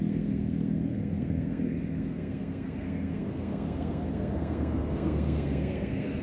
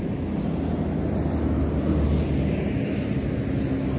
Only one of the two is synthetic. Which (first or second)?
first